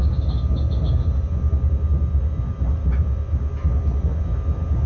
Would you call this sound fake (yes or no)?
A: no